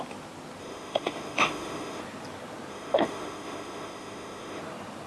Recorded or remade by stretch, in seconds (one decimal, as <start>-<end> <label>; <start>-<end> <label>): 0.0-0.6 recorded; 0.6-2.0 remade; 2.0-2.7 recorded; 2.7-4.6 remade; 4.6-5.1 recorded